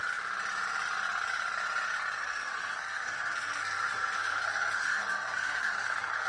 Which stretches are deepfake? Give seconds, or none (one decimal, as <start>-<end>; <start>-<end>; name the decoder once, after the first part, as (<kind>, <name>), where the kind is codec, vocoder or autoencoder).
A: 2.2-6.3 (codec, SNAC)